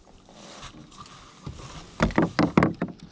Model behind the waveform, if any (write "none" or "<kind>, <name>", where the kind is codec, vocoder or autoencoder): none